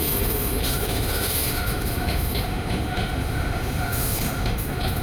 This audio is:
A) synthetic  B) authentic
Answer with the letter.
A